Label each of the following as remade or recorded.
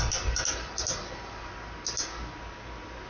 recorded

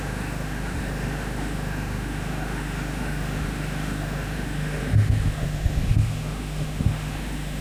remade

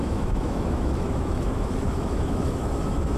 remade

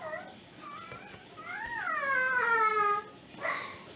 recorded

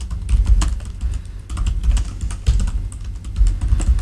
recorded